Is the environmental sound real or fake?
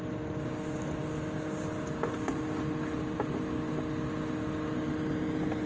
real